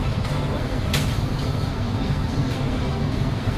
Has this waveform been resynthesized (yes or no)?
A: yes